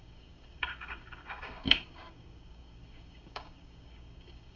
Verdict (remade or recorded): remade